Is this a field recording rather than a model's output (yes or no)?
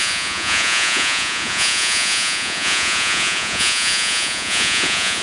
no